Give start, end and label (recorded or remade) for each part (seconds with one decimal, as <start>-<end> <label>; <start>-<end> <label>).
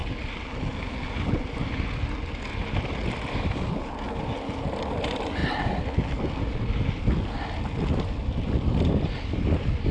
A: 0.0-9.9 recorded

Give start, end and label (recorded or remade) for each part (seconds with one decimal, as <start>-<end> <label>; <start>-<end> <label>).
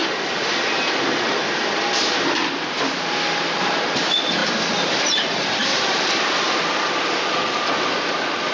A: 0.0-2.4 remade; 2.4-4.4 recorded; 4.4-5.0 remade; 5.0-5.6 recorded; 5.6-7.2 remade; 7.2-8.5 recorded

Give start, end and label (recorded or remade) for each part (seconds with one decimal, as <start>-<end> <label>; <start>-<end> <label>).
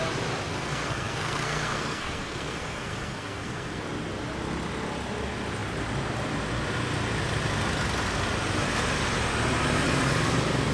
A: 0.0-0.5 recorded; 0.5-3.8 remade; 3.8-10.7 recorded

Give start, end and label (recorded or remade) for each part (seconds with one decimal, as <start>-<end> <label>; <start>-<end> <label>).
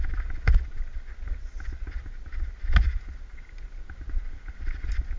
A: 0.0-5.2 recorded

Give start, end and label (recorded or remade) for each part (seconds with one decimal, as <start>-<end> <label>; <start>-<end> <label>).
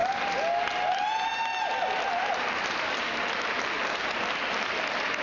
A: 0.0-5.2 recorded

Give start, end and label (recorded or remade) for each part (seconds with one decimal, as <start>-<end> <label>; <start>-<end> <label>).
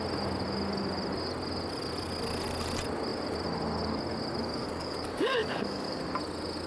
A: 0.0-4.4 recorded; 4.4-6.0 remade; 6.0-6.7 recorded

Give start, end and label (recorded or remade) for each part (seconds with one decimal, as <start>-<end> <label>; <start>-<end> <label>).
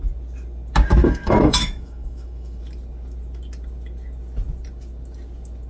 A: 0.0-1.0 recorded; 1.0-2.6 remade; 2.6-5.7 recorded